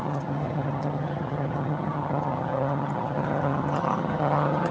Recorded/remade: remade